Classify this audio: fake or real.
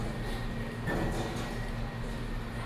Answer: real